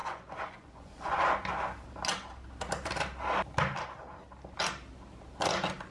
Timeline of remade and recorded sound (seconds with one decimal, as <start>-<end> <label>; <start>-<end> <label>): 0.0-1.2 remade; 1.2-5.9 recorded